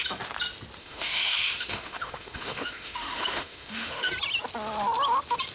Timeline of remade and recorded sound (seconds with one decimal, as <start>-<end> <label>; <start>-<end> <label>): 0.0-0.8 recorded; 0.8-4.1 remade; 4.1-5.5 recorded